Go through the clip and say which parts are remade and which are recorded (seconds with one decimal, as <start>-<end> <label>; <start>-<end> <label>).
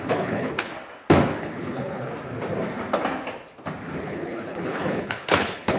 0.0-0.7 remade; 0.7-1.4 recorded; 1.4-2.1 remade; 2.1-4.0 recorded; 4.0-5.8 remade